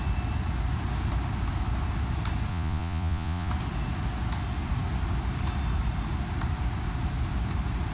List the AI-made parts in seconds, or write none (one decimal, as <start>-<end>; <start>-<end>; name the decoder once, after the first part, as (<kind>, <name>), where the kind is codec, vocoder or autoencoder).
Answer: 2.5-3.5 (vocoder, Vocos)